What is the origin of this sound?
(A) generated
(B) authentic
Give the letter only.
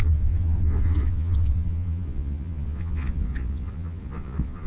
A